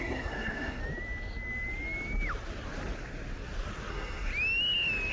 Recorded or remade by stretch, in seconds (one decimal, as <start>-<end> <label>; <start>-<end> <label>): 0.0-0.8 remade; 0.8-3.9 recorded; 3.9-4.3 remade; 4.3-5.1 recorded